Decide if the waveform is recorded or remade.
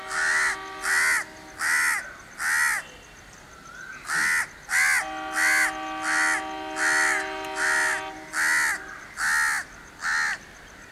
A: recorded